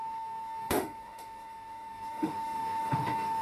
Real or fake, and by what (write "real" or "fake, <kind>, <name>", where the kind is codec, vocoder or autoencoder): fake, autoencoder, DAC-VAE